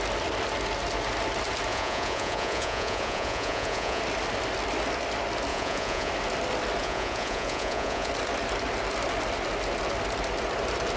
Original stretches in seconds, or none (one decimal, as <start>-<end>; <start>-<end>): 0.0-1.7; 4.0-5.5; 6.1-6.8; 8.1-11.0